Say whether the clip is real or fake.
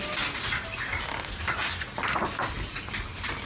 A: real